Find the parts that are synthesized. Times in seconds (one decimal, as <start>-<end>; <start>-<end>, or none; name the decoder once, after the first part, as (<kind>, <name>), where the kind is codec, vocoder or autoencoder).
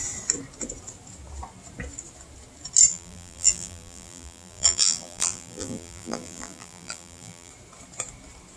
2.9-7.5 (vocoder, BigVGAN v2)